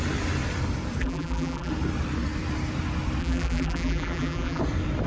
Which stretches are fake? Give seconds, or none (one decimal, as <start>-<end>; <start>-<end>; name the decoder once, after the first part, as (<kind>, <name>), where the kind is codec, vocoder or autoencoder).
1.0-1.7 (vocoder, BigVGAN v2); 3.2-4.6